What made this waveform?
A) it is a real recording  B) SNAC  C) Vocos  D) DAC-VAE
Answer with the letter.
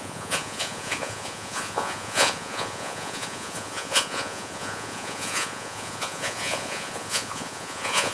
C